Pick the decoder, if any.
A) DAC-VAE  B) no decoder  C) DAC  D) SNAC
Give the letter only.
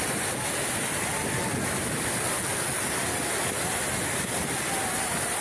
B